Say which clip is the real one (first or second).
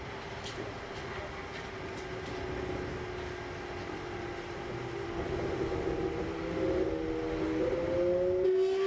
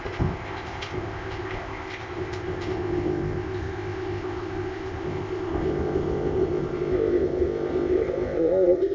first